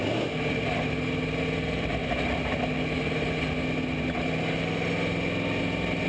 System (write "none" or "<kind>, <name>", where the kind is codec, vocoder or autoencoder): none